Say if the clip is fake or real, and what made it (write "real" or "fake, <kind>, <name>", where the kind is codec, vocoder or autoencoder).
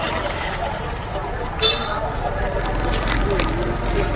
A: real